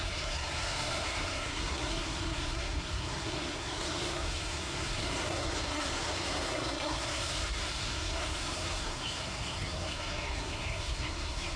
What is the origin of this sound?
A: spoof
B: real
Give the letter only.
A